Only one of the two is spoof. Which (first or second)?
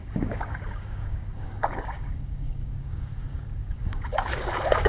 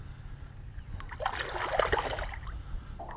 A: first